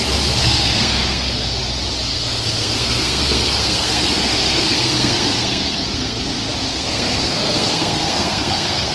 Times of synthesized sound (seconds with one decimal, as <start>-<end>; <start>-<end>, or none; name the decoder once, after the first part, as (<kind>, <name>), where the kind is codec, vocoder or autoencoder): 0.4-1.6 (codec, SNAC); 2.1-6.3; 6.7-8.9